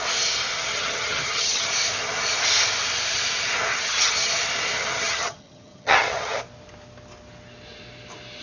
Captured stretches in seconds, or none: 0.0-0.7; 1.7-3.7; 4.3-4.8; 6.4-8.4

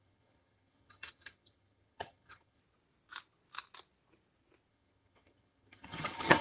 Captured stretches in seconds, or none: 2.6-4.7

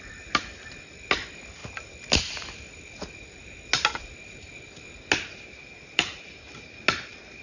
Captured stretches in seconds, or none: 0.0-7.4